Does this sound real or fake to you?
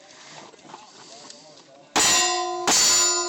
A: real